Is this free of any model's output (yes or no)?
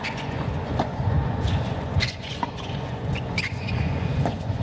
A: no